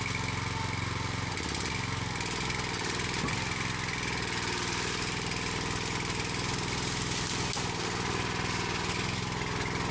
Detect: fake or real real